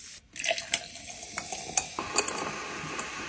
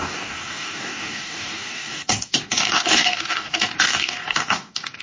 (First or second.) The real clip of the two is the first